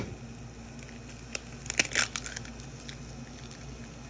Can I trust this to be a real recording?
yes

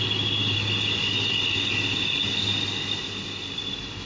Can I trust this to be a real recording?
yes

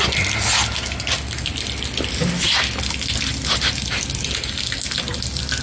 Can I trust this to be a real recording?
yes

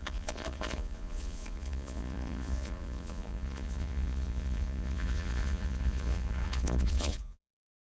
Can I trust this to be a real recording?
no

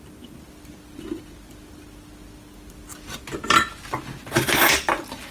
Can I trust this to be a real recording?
yes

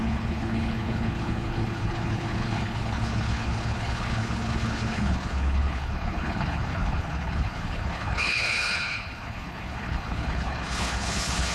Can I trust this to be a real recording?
no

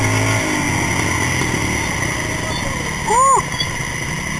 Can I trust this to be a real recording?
yes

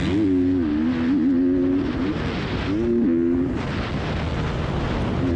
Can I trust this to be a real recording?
yes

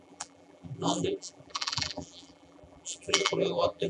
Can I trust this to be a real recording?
no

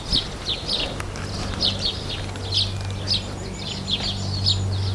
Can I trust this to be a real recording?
yes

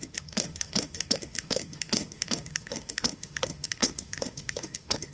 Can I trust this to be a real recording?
no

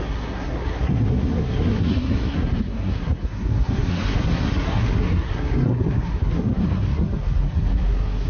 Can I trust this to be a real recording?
no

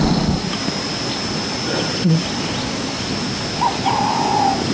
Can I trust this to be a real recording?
yes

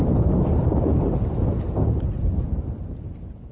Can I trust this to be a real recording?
yes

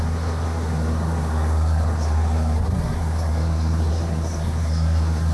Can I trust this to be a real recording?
no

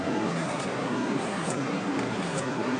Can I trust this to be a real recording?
no